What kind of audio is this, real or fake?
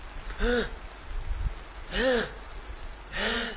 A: real